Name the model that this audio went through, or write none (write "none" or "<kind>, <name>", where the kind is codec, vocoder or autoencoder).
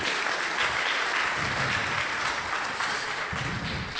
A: none